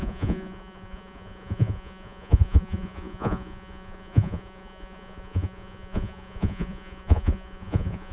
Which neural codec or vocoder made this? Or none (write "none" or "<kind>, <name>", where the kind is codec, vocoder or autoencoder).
vocoder, Vocos